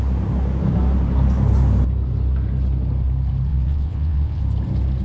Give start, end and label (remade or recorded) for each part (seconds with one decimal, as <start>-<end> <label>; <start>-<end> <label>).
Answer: 0.0-3.5 recorded; 3.5-4.4 remade; 4.4-5.0 recorded